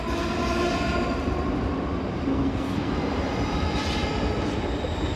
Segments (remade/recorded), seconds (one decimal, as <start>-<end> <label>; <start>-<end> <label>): 0.0-2.3 recorded; 2.3-2.9 remade; 2.9-5.2 recorded